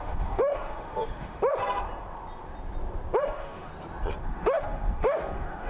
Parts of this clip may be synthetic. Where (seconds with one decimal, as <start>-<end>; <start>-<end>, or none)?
0.0-1.5; 3.2-3.7; 4.2-5.7